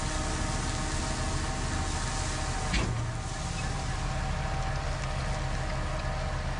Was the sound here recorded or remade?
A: recorded